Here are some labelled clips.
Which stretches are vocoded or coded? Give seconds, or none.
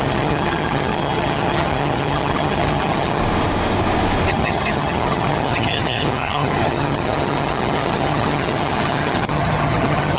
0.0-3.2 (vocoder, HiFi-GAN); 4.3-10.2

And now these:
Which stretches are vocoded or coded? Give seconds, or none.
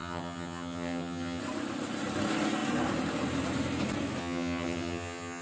0.0-1.4 (vocoder, HiFi-GAN); 4.2-5.4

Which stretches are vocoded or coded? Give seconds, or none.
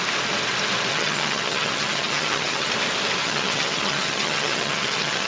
0.9-2.7 (vocoder, HiFi-GAN); 3.2-5.3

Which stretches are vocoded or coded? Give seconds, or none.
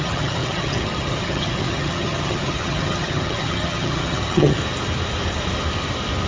0.0-4.6 (vocoder, HiFi-GAN)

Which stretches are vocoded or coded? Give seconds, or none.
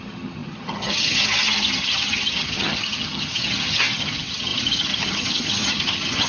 0.0-6.3 (vocoder, HiFi-GAN)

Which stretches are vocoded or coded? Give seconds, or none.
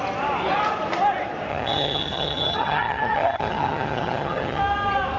1.5-4.6 (vocoder, HiFi-GAN)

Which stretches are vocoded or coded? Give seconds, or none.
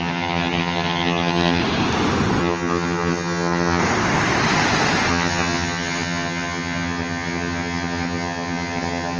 0.0-1.6 (vocoder, HiFi-GAN); 2.4-3.8; 5.1-9.2